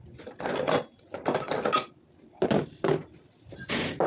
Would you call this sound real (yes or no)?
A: no